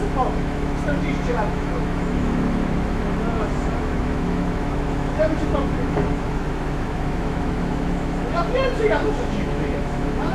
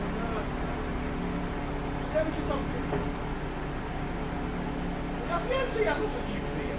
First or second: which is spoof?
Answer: first